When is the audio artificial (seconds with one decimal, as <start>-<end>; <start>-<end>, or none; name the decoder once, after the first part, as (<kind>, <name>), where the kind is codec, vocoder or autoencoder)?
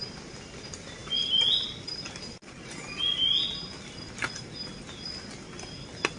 none